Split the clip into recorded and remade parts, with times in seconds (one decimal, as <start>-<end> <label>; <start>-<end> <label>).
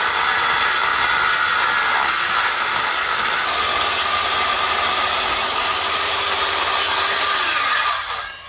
0.0-8.5 recorded